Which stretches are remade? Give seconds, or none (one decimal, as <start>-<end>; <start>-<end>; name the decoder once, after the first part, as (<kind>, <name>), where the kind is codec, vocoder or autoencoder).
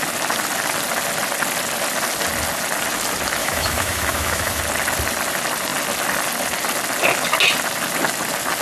3.4-4.6 (autoencoder, DAC-VAE)